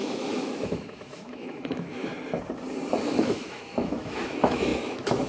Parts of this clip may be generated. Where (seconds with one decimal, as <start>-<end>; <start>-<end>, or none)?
0.0-2.1; 3.0-5.3